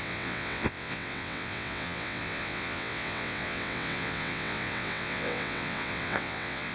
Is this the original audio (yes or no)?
no